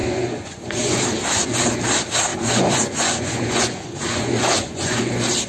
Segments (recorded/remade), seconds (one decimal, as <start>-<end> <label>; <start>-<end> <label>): 0.0-1.0 remade; 1.0-2.3 recorded; 2.3-5.1 remade; 5.1-5.5 recorded